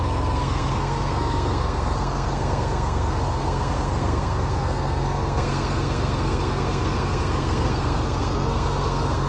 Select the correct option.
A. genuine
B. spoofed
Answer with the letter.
B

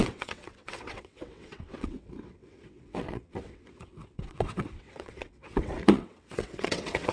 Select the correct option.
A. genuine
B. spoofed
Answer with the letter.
B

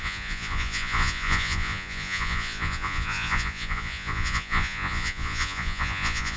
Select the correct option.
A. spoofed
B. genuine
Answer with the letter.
A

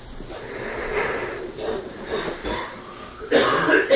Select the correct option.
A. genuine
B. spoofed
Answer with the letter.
A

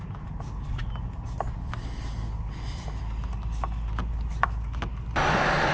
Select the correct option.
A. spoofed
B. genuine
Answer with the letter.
B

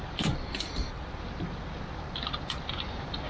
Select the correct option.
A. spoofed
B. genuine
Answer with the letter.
B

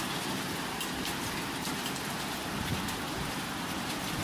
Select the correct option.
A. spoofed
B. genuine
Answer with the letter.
B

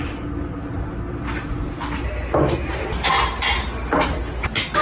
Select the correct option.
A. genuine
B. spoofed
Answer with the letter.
A